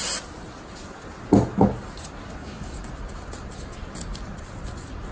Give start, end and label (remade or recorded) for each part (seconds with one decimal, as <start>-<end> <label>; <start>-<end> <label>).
0.0-2.4 recorded; 2.4-2.9 remade; 2.9-5.1 recorded